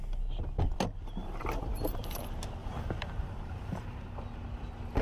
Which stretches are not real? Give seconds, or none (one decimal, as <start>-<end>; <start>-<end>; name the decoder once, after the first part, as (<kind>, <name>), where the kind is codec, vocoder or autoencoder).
1.2-2.2 (vocoder, BigVGAN v2); 2.6-4.0